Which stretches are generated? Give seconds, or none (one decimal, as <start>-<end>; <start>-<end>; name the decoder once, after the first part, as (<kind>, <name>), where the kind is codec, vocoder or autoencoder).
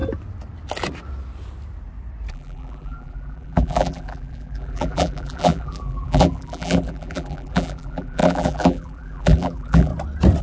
2.3-9.9 (vocoder, BigVGAN v2)